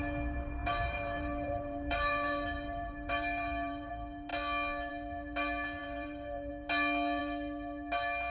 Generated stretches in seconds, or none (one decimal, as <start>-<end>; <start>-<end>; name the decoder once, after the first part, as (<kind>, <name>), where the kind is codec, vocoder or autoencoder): 0.6-3.9 (vocoder, BigVGAN v2); 5.8-6.5

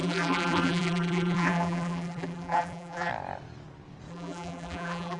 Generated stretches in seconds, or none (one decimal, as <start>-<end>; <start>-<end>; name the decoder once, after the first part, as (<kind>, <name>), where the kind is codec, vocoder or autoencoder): 0.0-3.1 (vocoder, BigVGAN v2); 4.1-5.2

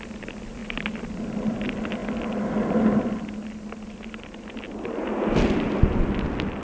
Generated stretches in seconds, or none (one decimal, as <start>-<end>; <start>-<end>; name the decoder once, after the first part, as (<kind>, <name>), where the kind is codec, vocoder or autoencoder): none

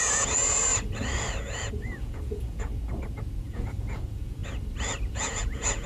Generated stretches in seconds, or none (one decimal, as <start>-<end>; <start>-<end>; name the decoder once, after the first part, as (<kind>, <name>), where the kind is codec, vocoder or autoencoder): 0.0-0.7 (vocoder, Vocos); 1.4-2.7; 3.4-4.4; 5.1-5.9